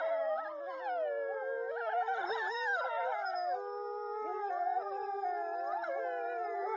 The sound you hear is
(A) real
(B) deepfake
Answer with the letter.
A